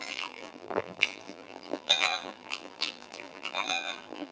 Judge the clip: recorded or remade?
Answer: remade